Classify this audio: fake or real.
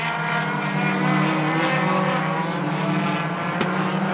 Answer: real